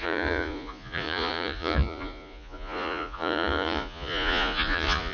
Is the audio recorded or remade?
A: remade